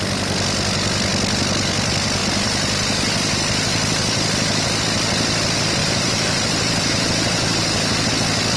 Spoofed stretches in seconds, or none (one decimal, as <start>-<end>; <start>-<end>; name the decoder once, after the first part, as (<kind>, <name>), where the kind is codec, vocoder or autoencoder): 5.8-8.1 (vocoder, BigVGAN v2)